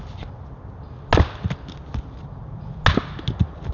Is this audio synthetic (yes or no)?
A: no